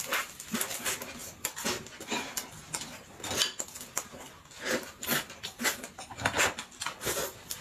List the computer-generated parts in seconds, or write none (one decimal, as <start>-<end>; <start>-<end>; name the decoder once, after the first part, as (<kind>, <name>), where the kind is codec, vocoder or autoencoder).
none